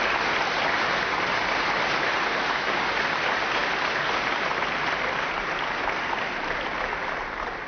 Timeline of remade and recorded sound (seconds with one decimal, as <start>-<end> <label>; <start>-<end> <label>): 0.0-7.7 recorded